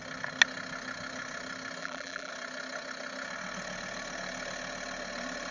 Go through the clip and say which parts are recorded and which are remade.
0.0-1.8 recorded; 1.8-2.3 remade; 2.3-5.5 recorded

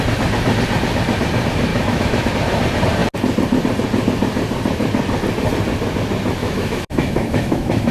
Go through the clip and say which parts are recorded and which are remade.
0.0-1.7 recorded; 1.7-2.3 remade; 2.3-6.4 recorded; 6.4-7.9 remade

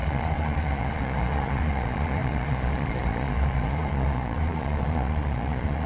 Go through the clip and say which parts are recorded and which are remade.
0.0-5.9 remade

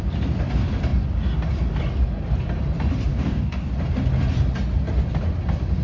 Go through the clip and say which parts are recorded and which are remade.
0.0-3.1 recorded; 3.1-3.7 remade; 3.7-5.8 recorded

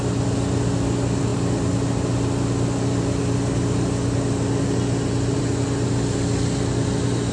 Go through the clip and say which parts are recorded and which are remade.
0.0-7.3 recorded

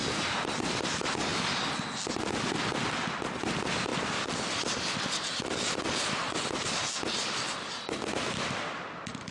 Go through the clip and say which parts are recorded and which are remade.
0.0-3.9 recorded; 3.9-6.5 remade; 6.5-9.3 recorded